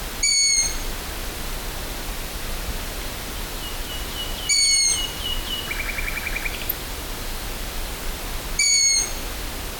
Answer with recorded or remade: recorded